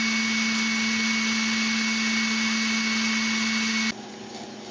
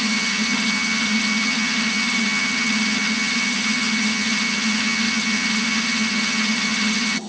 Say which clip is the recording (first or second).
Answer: first